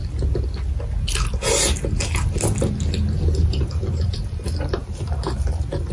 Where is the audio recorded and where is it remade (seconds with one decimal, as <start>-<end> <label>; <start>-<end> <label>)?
0.0-3.4 recorded; 3.4-5.9 remade

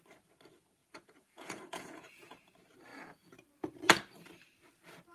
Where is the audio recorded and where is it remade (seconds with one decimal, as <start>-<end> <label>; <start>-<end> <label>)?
0.0-0.8 recorded; 0.8-2.5 remade; 2.5-2.9 recorded; 2.9-3.7 remade; 3.7-5.1 recorded